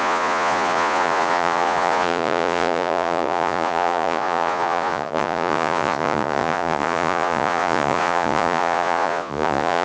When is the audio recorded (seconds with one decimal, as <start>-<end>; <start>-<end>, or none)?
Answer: none